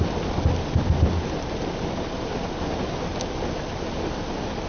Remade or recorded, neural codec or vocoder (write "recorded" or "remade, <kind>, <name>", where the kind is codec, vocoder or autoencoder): recorded